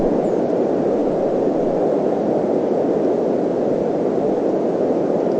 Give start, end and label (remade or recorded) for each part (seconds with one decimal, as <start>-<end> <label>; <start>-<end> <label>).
0.0-5.4 recorded